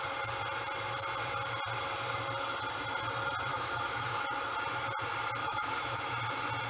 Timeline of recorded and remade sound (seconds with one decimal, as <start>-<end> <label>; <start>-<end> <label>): 0.0-3.5 recorded; 3.5-4.2 remade; 4.2-5.4 recorded; 5.4-6.1 remade; 6.1-6.7 recorded